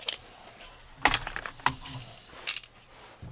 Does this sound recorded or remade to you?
recorded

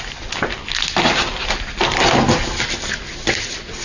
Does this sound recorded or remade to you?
recorded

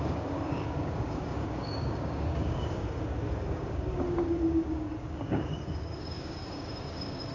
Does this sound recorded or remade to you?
remade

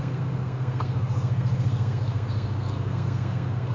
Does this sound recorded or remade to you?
remade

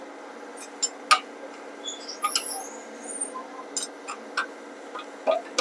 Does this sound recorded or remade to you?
recorded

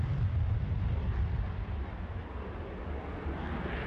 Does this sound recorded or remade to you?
recorded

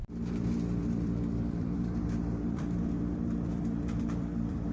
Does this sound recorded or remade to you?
remade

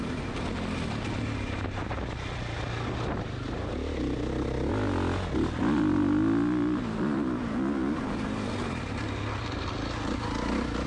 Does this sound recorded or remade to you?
recorded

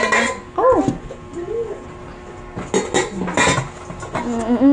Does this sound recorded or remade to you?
recorded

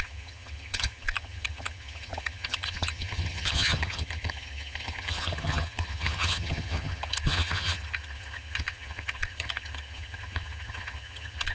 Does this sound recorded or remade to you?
remade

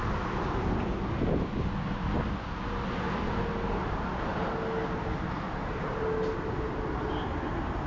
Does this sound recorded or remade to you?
recorded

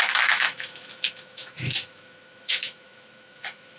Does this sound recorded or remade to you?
remade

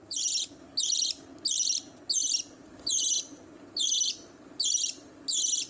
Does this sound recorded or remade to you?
recorded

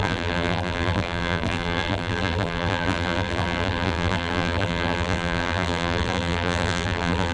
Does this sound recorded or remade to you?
remade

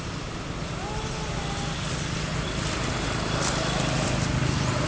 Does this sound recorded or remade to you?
recorded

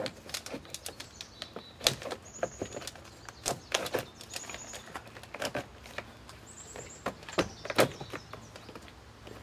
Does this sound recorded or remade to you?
recorded